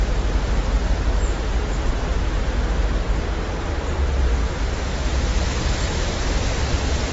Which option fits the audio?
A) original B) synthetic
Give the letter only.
A